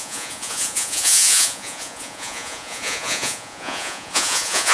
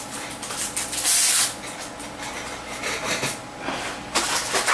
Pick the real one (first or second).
second